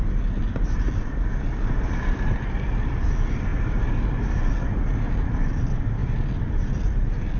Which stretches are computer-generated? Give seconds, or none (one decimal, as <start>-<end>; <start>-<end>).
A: none